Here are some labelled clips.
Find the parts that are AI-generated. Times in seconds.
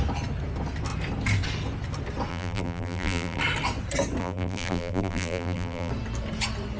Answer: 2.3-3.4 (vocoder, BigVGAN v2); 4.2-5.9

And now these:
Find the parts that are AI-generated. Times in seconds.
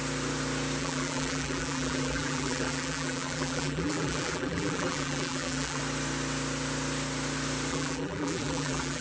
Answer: 0.8-5.8 (vocoder, BigVGAN v2); 7.7-9.0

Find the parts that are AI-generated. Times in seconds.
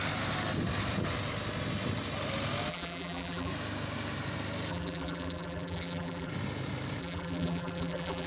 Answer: 2.7-3.5 (vocoder, BigVGAN v2); 4.7-6.3; 7.0-8.3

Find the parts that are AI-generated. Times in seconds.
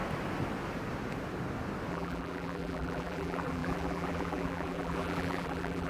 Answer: 1.9-5.9 (vocoder, BigVGAN v2)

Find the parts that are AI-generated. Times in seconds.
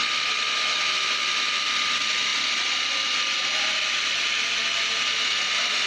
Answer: none